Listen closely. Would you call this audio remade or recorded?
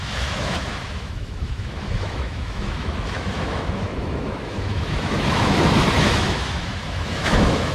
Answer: remade